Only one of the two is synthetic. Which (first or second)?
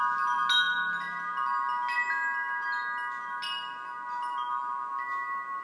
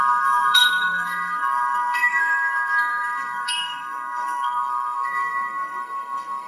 second